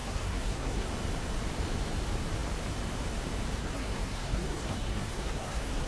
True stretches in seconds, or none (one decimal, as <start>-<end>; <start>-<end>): 0.9-3.6